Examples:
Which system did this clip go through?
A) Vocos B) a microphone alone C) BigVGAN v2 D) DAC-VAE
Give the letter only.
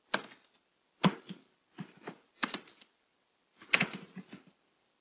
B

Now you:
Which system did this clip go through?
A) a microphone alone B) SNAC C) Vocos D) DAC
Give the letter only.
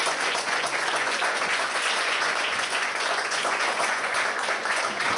C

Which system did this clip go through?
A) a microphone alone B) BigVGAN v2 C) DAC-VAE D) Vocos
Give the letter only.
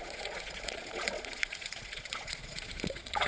D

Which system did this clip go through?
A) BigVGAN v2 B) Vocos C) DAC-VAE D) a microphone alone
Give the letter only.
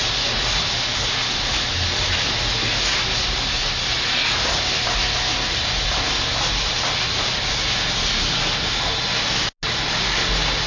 D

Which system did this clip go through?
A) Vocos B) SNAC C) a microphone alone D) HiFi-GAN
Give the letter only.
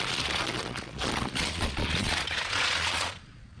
A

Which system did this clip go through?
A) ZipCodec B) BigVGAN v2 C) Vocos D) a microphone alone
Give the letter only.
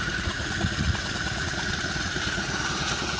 C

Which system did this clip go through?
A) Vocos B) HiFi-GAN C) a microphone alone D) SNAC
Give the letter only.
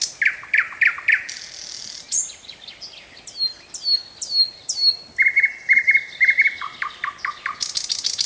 C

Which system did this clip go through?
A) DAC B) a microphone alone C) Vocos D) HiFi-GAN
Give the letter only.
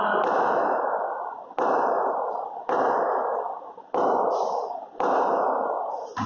B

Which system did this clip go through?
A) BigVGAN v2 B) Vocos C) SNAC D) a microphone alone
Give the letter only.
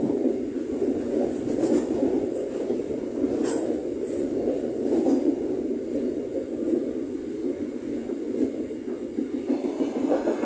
B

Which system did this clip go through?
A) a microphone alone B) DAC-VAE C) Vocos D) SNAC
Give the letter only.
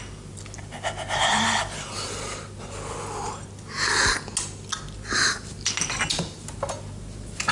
A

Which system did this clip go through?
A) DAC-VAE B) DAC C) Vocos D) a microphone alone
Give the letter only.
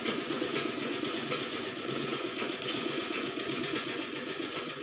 C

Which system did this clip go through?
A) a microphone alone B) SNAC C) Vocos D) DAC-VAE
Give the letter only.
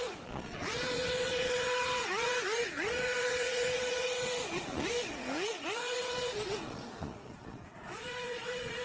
C